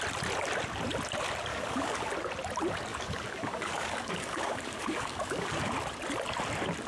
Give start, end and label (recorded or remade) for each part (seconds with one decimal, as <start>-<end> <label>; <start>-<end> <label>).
0.0-1.5 recorded; 1.5-2.1 remade; 2.1-2.9 recorded; 2.9-5.7 remade; 5.7-6.9 recorded